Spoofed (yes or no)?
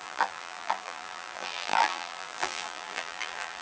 yes